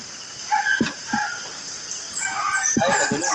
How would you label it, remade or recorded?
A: remade